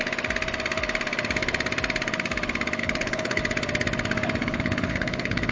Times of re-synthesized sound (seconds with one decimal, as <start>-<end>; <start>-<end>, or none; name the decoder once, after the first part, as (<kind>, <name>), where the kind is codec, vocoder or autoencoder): 2.8-3.4 (codec, HILCodec); 4.4-5.5